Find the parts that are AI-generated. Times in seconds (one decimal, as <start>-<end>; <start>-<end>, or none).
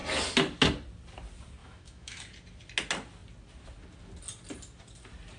1.6-2.2